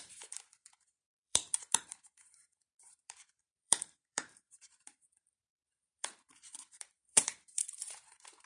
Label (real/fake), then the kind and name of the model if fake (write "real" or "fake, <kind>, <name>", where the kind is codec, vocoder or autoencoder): fake, vocoder, BigVGAN v2